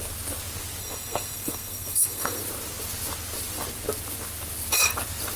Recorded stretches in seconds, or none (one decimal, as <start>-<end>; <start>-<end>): 0.0-0.8; 2.4-5.4